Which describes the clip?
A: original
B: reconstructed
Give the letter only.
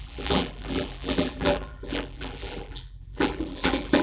B